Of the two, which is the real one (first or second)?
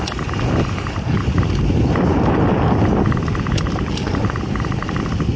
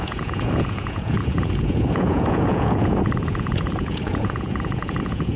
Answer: first